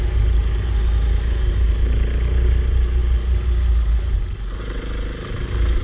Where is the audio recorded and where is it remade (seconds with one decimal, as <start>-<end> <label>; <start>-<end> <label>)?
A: 0.0-5.8 recorded